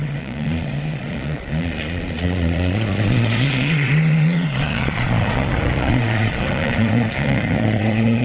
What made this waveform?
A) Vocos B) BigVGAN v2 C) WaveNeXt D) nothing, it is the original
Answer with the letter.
A